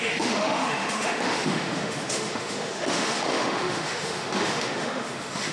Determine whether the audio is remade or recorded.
remade